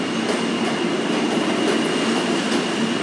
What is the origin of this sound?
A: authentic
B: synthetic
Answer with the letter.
A